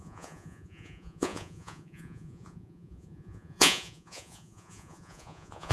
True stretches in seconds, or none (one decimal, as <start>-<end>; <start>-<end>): none